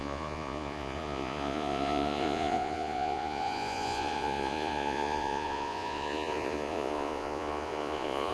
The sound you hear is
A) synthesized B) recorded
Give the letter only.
A